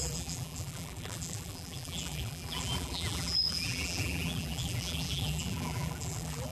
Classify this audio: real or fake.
fake